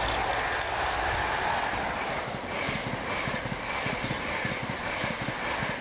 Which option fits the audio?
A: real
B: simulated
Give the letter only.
A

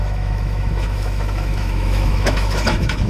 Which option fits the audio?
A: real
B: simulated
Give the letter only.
B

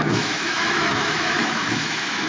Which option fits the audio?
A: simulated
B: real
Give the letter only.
A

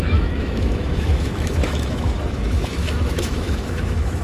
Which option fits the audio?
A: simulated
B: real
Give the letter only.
A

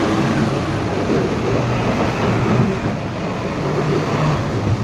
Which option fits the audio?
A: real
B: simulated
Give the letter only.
A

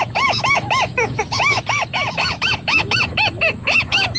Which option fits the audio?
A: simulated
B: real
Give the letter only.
A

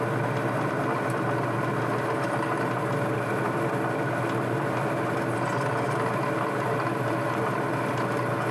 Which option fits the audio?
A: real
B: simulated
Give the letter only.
A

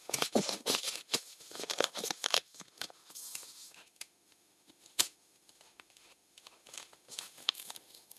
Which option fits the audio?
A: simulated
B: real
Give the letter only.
A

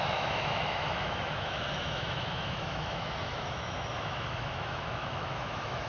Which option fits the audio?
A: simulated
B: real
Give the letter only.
A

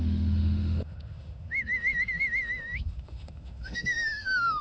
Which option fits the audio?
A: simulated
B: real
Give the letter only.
A